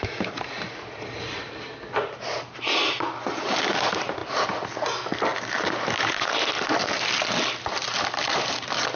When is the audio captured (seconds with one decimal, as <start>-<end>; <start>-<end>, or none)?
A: 0.0-9.0